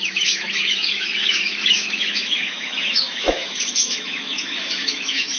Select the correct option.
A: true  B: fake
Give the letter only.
B